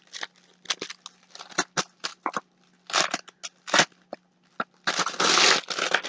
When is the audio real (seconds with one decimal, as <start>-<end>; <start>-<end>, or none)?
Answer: 0.0-6.1